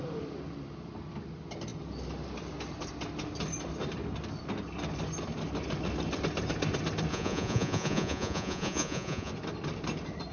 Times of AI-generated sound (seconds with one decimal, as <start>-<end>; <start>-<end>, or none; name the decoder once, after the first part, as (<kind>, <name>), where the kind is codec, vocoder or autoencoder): 7.1-9.3 (vocoder, Vocos)